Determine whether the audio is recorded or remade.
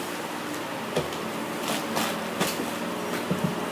recorded